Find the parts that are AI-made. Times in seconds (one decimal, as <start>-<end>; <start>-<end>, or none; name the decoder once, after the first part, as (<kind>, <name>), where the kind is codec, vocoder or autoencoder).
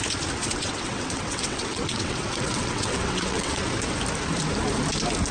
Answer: 0.4-3.6 (vocoder, WaveNeXt)